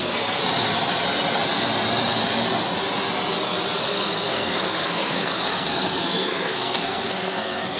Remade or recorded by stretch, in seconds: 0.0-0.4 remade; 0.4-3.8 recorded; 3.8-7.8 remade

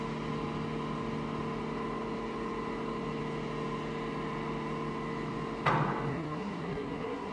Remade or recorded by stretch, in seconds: 0.0-6.1 recorded; 6.1-7.3 remade

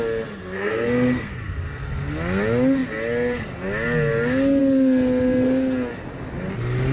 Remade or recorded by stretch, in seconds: 0.0-0.4 recorded; 0.4-1.3 remade; 1.3-6.9 recorded

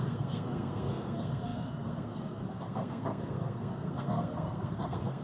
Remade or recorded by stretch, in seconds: 0.0-5.2 remade

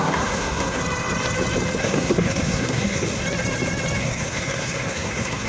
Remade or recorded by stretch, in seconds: 0.0-0.8 remade; 0.8-1.8 recorded; 1.8-3.2 remade; 3.2-4.0 recorded; 4.0-5.5 remade

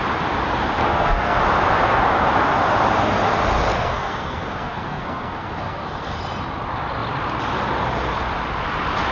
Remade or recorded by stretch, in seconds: 0.0-0.8 recorded; 0.8-1.4 remade; 1.4-3.7 recorded; 3.7-6.2 remade; 6.2-9.1 recorded

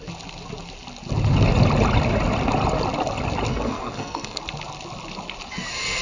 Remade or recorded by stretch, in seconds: 0.0-3.5 recorded; 3.5-4.4 remade; 4.4-6.0 recorded